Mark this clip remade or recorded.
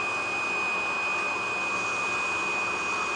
recorded